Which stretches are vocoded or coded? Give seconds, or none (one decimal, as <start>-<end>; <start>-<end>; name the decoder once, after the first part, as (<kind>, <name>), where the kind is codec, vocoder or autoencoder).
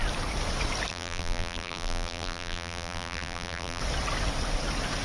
0.9-3.8 (vocoder, BigVGAN v2)